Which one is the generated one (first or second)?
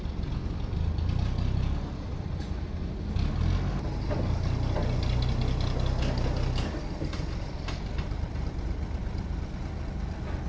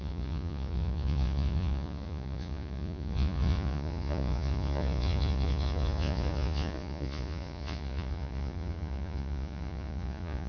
second